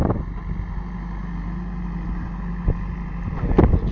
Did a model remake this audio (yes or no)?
no